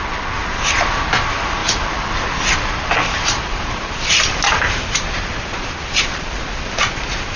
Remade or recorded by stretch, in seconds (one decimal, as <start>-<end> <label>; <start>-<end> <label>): 0.0-3.0 recorded; 3.0-6.1 remade; 6.1-7.4 recorded